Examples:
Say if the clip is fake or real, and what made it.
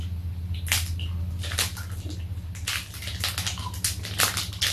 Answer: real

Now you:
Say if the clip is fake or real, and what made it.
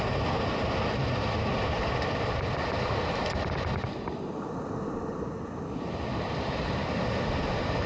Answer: real